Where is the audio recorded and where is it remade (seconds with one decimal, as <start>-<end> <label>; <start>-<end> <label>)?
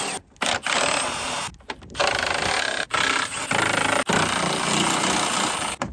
0.0-5.9 recorded